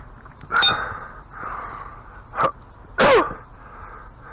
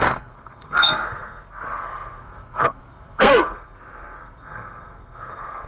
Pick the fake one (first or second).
second